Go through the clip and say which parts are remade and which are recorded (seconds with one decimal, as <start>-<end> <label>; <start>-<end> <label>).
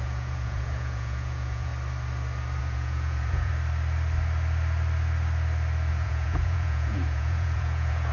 0.0-1.7 remade; 1.7-2.6 recorded; 2.6-3.5 remade; 3.5-5.9 recorded; 5.9-8.1 remade